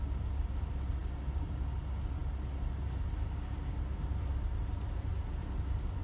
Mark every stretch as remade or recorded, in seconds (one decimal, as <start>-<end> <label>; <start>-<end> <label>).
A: 0.0-6.0 recorded